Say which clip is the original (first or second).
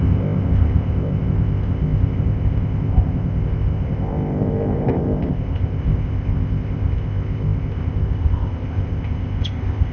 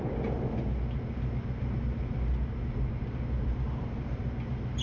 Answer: second